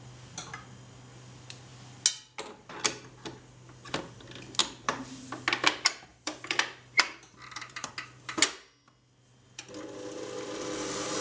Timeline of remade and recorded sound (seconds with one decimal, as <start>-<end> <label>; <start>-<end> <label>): 0.0-4.6 recorded; 4.6-5.2 remade; 5.2-6.1 recorded; 6.1-7.9 remade; 7.9-11.2 recorded